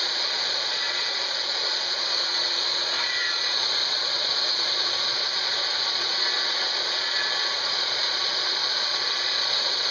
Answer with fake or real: fake